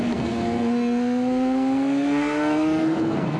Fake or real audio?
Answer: fake